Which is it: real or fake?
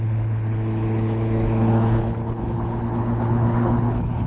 fake